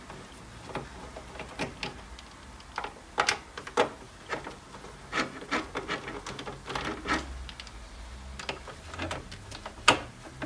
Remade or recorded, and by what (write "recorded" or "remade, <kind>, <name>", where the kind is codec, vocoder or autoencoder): recorded